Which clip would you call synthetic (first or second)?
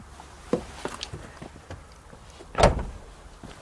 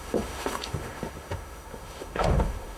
second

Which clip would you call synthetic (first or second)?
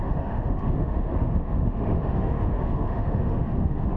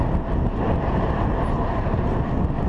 first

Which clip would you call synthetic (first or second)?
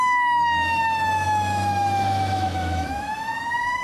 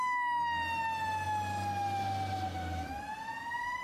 first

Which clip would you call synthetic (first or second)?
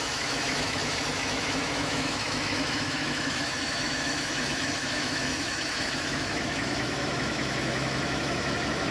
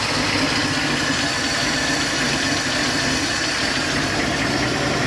first